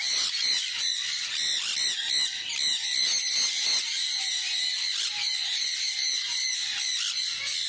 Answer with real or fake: real